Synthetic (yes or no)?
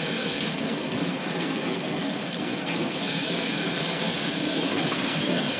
yes